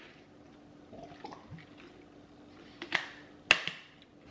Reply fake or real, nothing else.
real